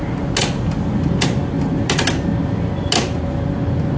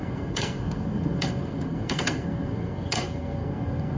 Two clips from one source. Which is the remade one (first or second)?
second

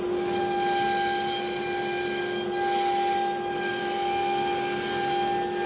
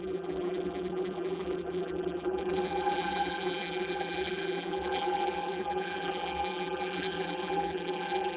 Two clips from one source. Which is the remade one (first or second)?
second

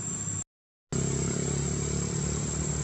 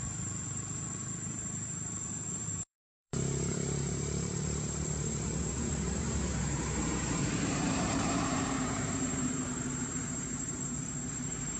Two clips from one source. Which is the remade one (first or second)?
second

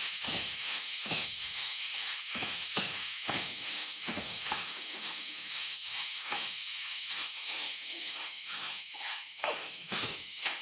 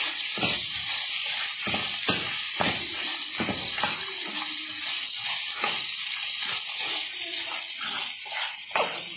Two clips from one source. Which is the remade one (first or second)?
first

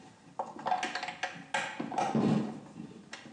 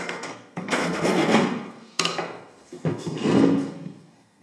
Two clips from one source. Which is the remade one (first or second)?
second